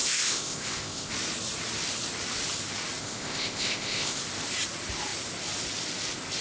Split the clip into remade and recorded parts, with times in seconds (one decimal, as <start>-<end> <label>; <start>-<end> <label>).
0.0-1.1 remade; 1.1-3.0 recorded; 3.0-4.2 remade; 4.2-6.4 recorded